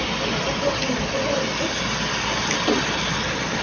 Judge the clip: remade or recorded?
recorded